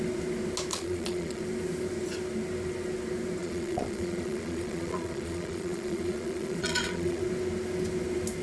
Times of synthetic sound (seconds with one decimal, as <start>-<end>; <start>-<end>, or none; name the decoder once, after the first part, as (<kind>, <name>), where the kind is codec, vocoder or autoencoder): 0.7-1.4 (vocoder, Vocos); 3.4-7.2